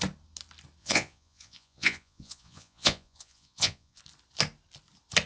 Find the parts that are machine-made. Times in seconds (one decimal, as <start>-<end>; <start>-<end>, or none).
0.8-4.0